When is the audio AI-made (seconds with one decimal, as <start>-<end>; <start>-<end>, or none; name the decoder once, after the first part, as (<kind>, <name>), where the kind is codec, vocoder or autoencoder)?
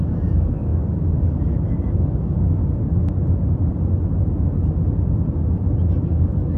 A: 0.0-2.6 (codec, DAC); 6.0-6.6